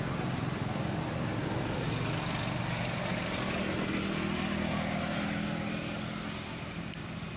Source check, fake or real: real